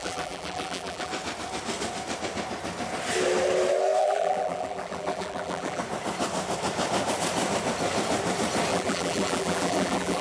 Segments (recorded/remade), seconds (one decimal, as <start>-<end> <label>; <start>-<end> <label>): 0.0-1.1 remade; 1.1-4.0 recorded; 4.0-5.8 remade; 5.8-8.7 recorded; 8.7-10.2 remade